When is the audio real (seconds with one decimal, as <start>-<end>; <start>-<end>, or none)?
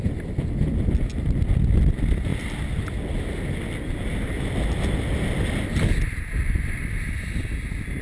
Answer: 0.0-8.0